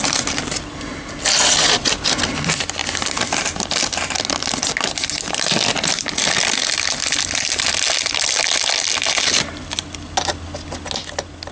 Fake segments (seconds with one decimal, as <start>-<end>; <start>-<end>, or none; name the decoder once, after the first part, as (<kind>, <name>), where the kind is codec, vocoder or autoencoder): none